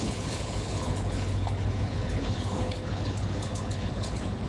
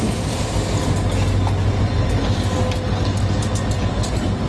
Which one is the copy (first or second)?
first